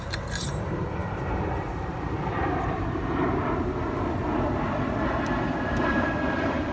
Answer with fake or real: fake